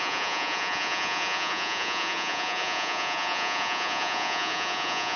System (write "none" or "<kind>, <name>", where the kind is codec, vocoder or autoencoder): vocoder, Vocos